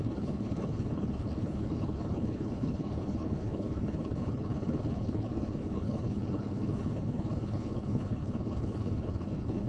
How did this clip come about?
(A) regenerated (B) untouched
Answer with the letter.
A